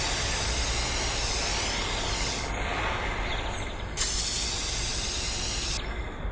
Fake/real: real